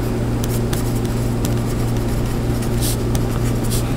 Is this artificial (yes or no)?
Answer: no